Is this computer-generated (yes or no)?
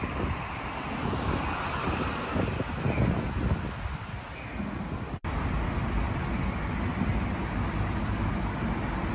no